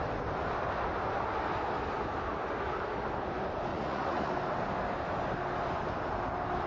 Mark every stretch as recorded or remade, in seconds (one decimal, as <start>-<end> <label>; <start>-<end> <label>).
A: 0.0-3.7 recorded; 3.7-4.3 remade; 4.3-6.7 recorded